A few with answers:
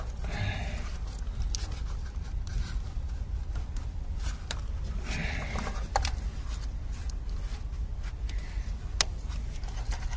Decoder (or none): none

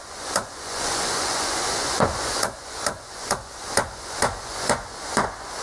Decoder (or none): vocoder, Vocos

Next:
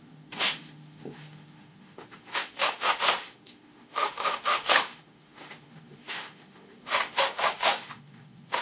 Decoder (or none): autoencoder, DAC-VAE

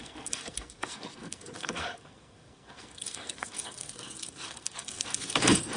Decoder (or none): codec, SNAC